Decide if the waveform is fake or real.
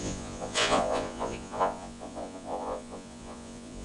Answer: fake